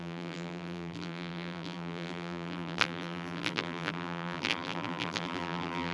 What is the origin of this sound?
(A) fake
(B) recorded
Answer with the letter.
A